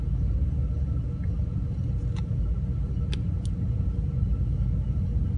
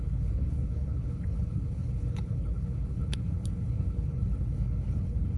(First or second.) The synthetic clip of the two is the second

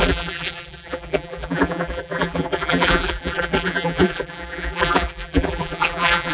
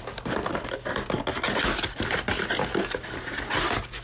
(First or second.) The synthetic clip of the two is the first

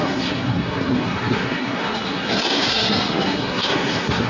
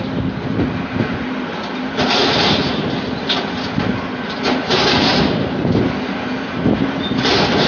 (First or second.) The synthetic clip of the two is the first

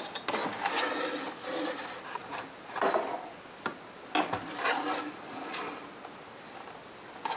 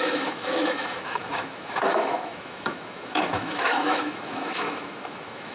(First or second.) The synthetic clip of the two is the second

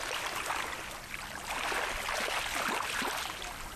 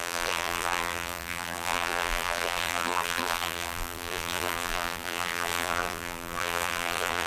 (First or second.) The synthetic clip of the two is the second